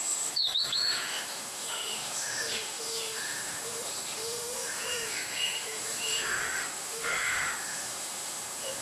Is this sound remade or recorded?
remade